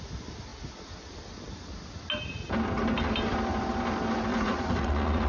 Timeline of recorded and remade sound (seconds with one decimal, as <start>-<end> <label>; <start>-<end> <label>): 0.0-4.3 recorded; 4.3-5.3 remade